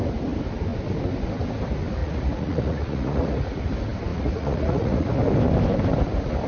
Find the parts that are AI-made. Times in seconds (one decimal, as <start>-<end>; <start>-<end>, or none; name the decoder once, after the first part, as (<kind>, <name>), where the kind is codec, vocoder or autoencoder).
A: 2.0-3.6 (vocoder, Vocos); 4.1-5.1